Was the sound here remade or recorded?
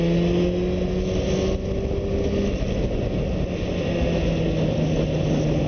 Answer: recorded